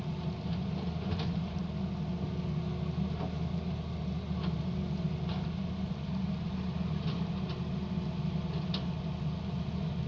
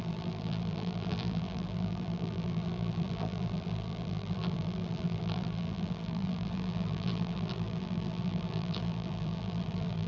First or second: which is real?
first